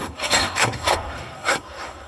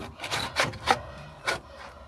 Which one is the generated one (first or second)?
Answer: first